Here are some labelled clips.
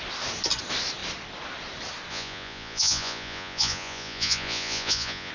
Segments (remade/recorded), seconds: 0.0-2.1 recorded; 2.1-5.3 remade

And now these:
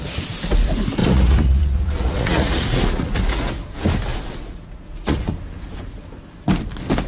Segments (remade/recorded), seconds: 0.0-1.0 recorded; 1.0-3.5 remade; 3.5-4.1 recorded; 4.1-5.3 remade; 5.3-7.1 recorded

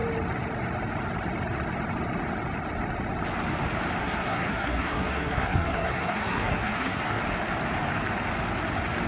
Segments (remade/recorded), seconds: 0.0-4.0 recorded; 4.0-7.2 remade; 7.2-9.1 recorded

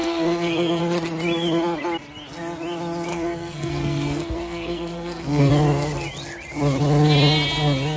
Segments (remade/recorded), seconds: 0.0-0.8 remade; 0.8-3.1 recorded; 3.1-5.5 remade; 5.5-8.0 recorded

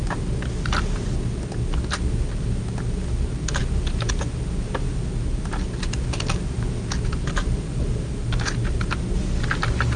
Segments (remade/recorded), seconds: 0.0-10.0 recorded